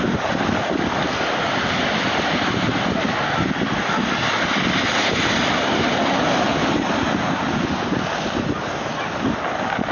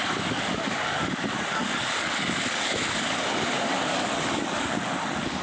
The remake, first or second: second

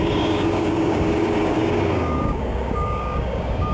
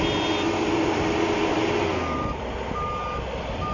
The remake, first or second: first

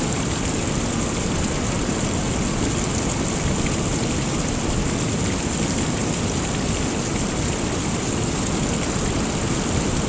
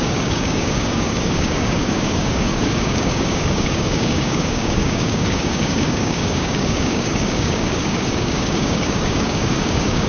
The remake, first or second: second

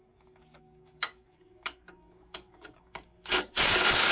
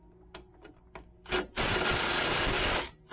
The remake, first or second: first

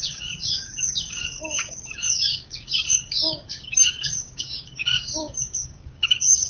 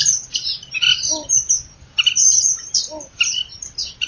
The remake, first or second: first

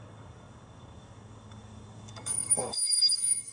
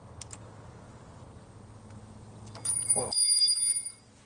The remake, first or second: first